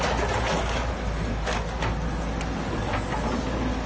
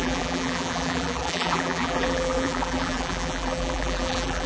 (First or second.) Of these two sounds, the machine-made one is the second